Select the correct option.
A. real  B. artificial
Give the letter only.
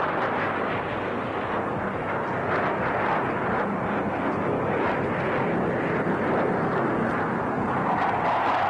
A